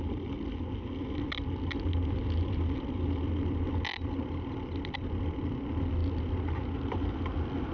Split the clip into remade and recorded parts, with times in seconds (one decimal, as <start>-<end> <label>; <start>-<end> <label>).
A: 0.0-7.7 recorded